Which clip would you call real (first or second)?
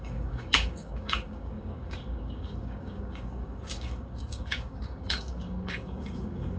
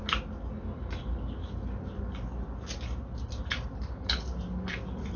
second